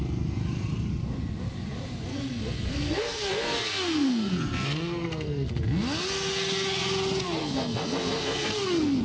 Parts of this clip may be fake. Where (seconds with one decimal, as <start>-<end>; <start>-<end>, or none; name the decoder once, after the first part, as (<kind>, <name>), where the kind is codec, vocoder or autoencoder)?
2.1-5.6 (codec, SNAC); 7.4-9.0